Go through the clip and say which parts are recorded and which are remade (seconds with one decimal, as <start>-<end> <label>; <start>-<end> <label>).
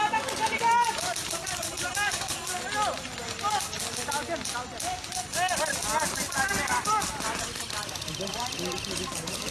0.0-9.5 recorded